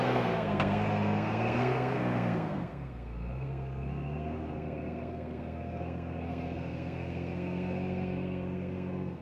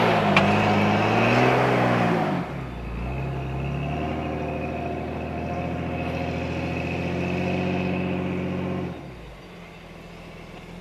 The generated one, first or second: first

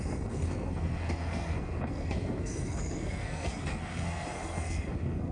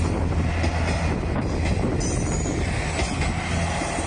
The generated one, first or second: first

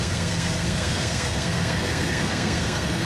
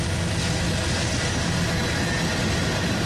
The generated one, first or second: first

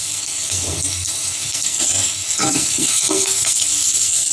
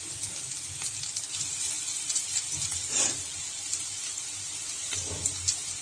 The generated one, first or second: first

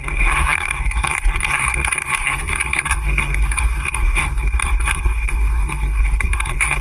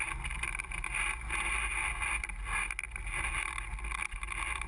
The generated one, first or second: first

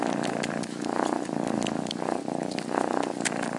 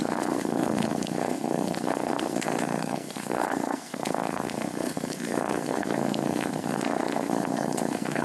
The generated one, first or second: second